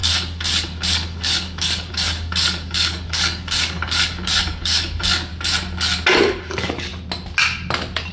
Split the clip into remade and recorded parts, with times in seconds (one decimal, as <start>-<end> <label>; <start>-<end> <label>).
0.0-5.3 remade; 5.3-6.4 recorded; 6.4-6.9 remade; 6.9-8.1 recorded